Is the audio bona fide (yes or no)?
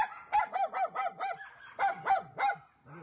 yes